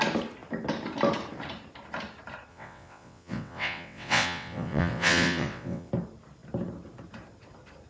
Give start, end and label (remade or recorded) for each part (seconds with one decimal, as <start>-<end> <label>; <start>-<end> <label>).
0.0-2.5 recorded; 2.5-5.9 remade; 5.9-7.9 recorded